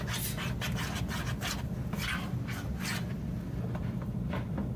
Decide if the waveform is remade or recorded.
recorded